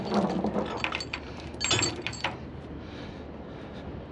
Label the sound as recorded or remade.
recorded